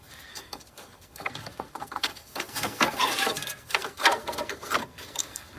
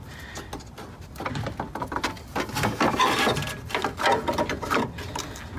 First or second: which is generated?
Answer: first